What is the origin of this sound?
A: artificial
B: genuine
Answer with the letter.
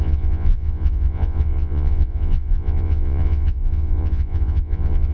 A